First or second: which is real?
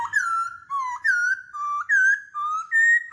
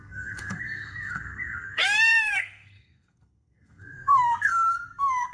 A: first